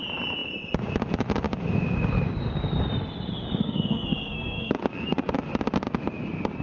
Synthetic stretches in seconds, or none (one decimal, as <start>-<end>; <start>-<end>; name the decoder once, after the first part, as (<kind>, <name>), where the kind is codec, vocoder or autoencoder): 3.6-5.2 (codec, SNAC)